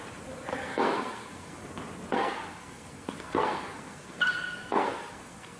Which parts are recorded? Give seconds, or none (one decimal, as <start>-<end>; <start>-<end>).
0.0-0.5; 1.6-2.1